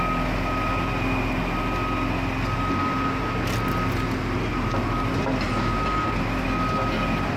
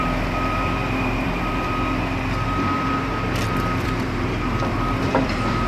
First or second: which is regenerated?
second